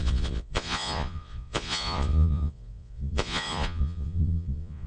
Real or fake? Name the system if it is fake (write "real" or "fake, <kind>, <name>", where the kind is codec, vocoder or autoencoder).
fake, vocoder, Vocos